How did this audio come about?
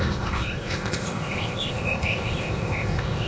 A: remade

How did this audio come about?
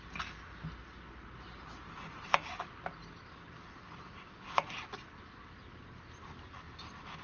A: recorded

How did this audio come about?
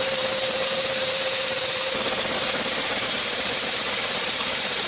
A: remade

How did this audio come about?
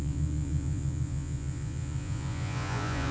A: remade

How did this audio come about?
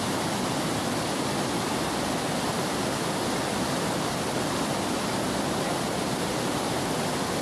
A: recorded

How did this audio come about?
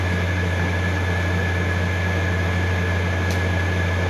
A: recorded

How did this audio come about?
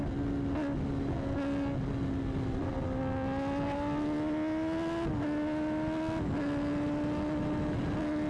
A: recorded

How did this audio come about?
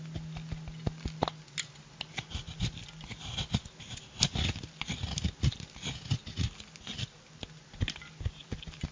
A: recorded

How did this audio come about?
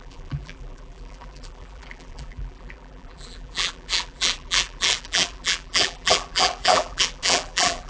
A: remade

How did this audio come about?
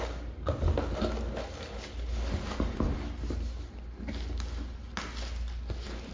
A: recorded